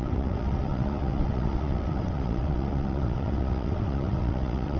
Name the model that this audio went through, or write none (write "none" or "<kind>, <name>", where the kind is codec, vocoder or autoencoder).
vocoder, WaveNeXt